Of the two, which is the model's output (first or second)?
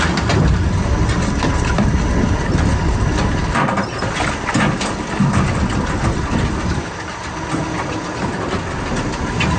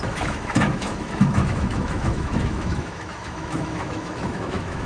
second